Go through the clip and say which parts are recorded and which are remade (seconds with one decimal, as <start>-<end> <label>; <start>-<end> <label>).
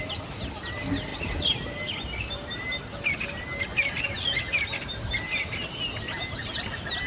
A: 0.0-7.1 recorded